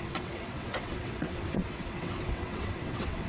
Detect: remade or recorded remade